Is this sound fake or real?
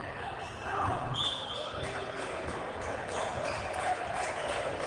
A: fake